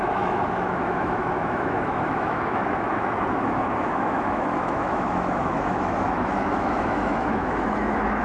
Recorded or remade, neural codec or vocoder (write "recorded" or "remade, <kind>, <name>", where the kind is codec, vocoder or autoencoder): remade, autoencoder, DAC-VAE